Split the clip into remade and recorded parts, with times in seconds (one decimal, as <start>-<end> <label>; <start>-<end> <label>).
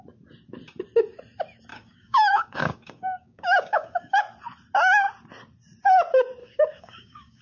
0.0-1.7 recorded; 1.7-4.2 remade; 4.2-6.4 recorded; 6.4-7.4 remade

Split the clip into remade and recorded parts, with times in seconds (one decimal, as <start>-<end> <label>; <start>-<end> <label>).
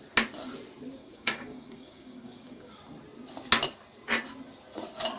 0.0-1.0 recorded; 1.0-2.7 remade; 2.7-5.2 recorded